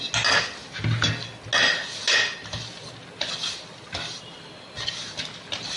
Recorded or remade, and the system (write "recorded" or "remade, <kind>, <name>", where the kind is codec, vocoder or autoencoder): recorded